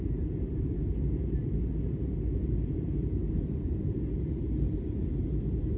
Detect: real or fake fake